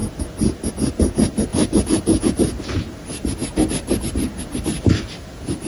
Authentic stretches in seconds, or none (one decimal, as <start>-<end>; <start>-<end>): 0.0-1.5; 2.2-5.7